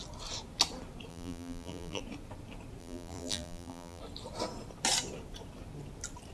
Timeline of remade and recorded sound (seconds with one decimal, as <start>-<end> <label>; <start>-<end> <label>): 0.0-1.1 recorded; 1.1-2.0 remade; 2.0-2.8 recorded; 2.8-4.0 remade; 4.0-6.3 recorded